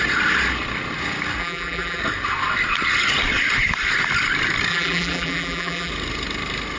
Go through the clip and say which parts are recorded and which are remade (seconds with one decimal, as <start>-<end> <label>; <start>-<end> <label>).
0.0-1.4 recorded; 1.4-2.0 remade; 2.0-4.7 recorded; 4.7-5.9 remade; 5.9-6.8 recorded